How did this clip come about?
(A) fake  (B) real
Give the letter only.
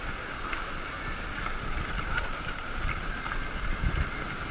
B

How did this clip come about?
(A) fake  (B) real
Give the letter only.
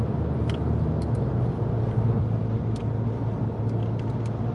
B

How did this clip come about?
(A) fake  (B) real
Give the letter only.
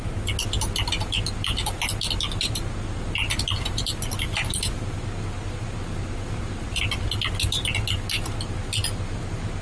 B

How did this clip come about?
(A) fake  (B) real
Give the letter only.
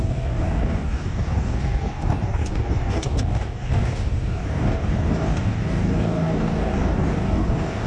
A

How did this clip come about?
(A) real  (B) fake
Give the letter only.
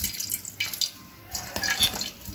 A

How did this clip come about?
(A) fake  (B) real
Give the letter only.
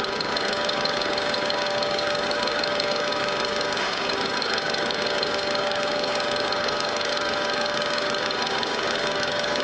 A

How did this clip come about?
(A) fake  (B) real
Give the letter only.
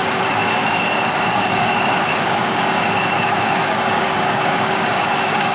A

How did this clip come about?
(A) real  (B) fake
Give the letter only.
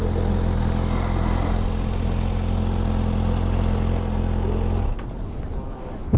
A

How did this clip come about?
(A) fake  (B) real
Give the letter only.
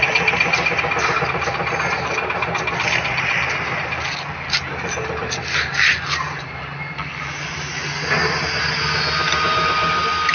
B